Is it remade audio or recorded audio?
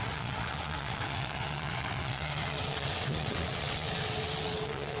remade